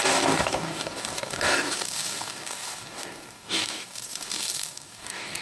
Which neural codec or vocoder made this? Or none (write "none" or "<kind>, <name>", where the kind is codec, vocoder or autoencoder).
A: codec, DAC